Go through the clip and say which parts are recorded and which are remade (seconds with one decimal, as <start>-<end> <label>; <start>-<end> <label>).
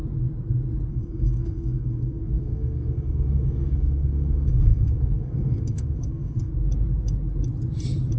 0.0-0.9 recorded; 0.9-6.5 remade; 6.5-8.2 recorded